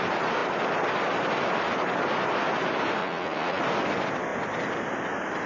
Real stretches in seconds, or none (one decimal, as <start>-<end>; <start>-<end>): 0.0-3.0; 3.6-5.5